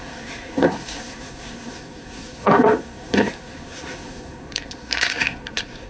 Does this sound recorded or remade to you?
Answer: remade